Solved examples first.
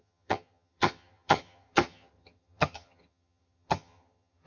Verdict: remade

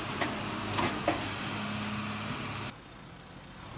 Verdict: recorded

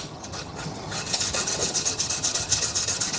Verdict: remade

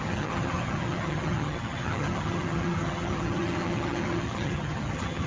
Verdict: remade